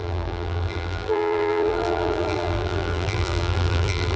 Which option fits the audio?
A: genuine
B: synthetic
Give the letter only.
B